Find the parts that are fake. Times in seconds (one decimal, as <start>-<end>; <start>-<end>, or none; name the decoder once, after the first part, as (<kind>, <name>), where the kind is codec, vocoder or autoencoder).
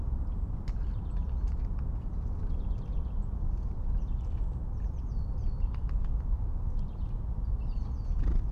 5.4-6.7 (vocoder, BigVGAN v2)